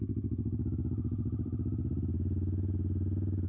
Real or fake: fake